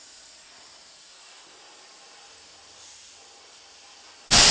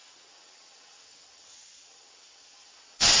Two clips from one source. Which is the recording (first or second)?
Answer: first